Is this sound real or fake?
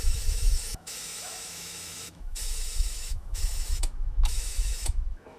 fake